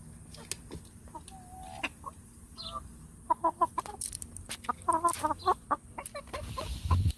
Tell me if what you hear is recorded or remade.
recorded